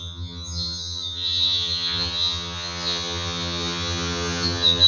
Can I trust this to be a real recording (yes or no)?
no